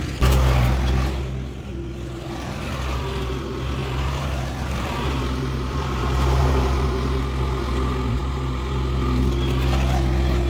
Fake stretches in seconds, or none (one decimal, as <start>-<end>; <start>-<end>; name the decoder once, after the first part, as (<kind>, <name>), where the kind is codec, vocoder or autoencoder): 1.7-3.0 (vocoder, BigVGAN v2); 3.8-7.2